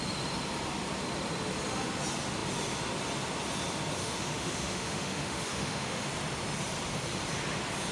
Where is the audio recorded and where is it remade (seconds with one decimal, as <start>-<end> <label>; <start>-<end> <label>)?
0.0-4.0 recorded; 4.0-6.1 remade; 6.1-7.9 recorded

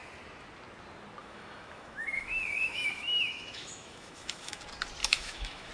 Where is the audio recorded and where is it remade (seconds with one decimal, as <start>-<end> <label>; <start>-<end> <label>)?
0.0-1.2 recorded; 1.2-4.6 remade; 4.6-5.0 recorded; 5.0-5.7 remade

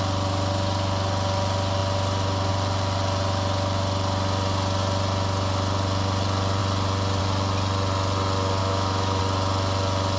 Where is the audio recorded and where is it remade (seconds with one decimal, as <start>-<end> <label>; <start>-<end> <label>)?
0.0-8.6 recorded; 8.6-9.2 remade; 9.2-10.2 recorded

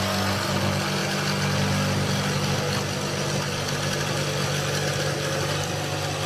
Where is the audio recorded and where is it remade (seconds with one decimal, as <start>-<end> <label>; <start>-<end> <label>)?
0.0-6.3 recorded

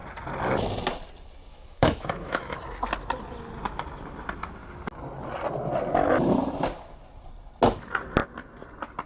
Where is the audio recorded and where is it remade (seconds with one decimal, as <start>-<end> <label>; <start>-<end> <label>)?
0.0-1.5 recorded; 1.5-2.6 remade; 2.6-9.1 recorded

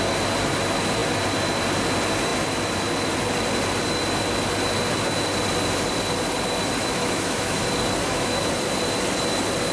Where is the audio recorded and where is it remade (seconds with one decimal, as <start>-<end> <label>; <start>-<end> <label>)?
0.0-6.8 recorded; 6.8-7.6 remade; 7.6-8.0 recorded; 8.0-8.5 remade; 8.5-9.7 recorded